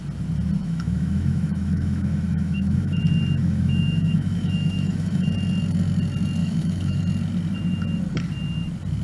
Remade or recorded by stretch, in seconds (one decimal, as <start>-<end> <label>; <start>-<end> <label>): 0.0-0.6 recorded; 0.6-3.0 remade; 3.0-3.4 recorded; 3.4-5.3 remade; 5.3-6.4 recorded; 6.4-7.0 remade; 7.0-9.0 recorded